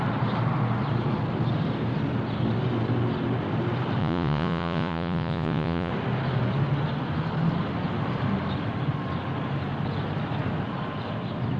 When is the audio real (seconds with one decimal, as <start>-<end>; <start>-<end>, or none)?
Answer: 0.0-4.0; 5.9-11.6